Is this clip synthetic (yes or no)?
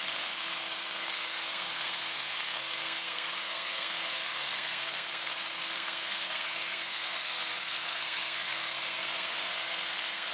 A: yes